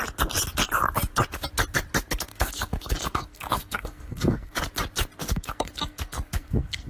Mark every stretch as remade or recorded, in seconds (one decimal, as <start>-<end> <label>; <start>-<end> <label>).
0.0-2.3 recorded; 2.3-4.6 remade; 4.6-5.2 recorded; 5.2-6.9 remade